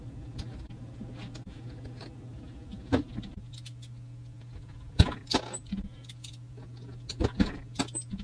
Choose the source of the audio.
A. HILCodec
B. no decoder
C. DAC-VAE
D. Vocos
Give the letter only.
B